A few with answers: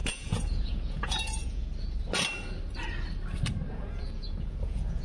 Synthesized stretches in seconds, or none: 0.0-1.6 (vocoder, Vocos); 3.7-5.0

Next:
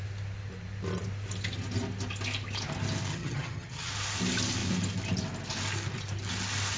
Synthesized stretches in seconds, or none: 3.1-3.9 (vocoder, HiFi-GAN)

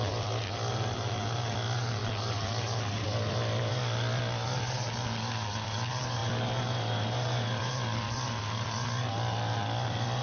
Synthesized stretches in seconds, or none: 6.2-7.7 (vocoder, BigVGAN v2)

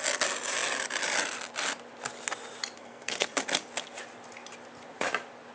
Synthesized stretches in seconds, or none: 2.8-3.4 (codec, SNAC)